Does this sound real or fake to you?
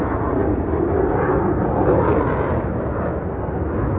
real